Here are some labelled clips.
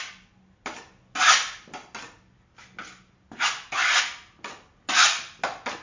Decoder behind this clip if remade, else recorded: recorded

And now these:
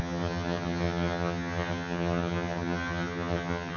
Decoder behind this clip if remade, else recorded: remade, vocoder, HiFi-GAN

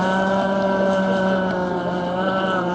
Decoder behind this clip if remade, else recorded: recorded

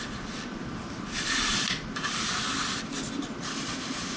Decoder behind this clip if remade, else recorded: recorded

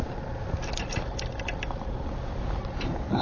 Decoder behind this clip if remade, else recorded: recorded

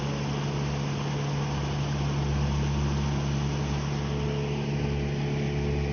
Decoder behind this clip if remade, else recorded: recorded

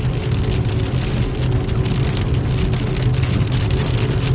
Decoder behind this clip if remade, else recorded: recorded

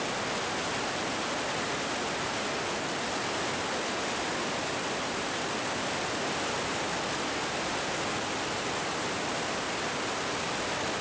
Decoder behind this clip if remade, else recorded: recorded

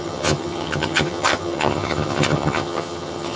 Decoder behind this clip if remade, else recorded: remade, vocoder, HiFi-GAN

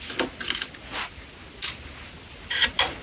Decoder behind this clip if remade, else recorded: recorded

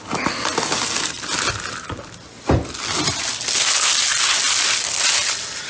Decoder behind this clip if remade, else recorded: recorded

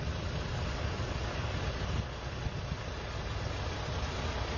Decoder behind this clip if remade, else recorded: recorded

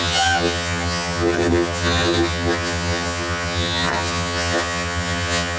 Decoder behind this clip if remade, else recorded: remade, vocoder, HiFi-GAN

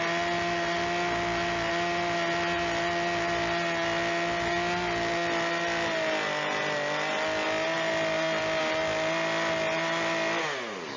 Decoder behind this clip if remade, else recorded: recorded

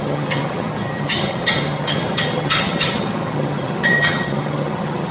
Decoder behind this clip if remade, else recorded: remade, vocoder, HiFi-GAN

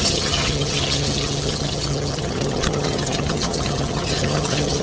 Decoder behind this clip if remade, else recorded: remade, vocoder, HiFi-GAN